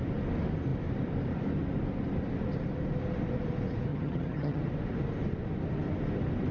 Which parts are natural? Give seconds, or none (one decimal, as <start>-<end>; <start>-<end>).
0.0-3.9; 4.6-6.5

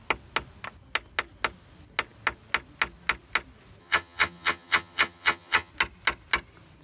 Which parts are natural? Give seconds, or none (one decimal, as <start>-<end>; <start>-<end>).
0.0-3.8; 5.7-6.8

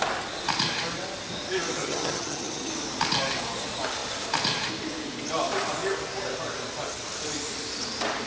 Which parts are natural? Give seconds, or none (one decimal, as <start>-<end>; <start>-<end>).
0.0-1.8; 2.7-8.3

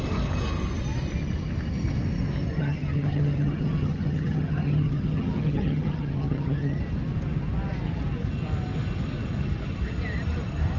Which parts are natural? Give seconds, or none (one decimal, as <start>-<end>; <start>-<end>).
0.0-2.6; 6.8-10.8

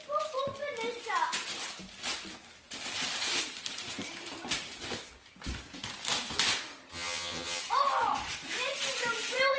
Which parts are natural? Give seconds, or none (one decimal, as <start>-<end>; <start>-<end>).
0.0-6.9; 7.6-9.6

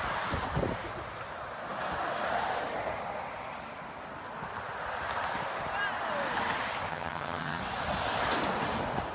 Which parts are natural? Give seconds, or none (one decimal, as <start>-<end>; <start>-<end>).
0.0-6.9; 7.6-9.1